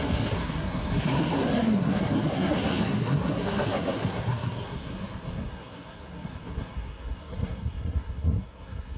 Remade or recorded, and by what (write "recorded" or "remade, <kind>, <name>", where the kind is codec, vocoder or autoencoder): remade, codec, SNAC